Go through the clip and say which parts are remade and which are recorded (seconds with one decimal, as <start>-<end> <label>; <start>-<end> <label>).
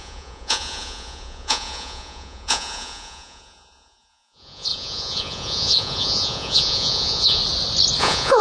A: 0.0-7.4 remade; 7.4-8.0 recorded; 8.0-8.4 remade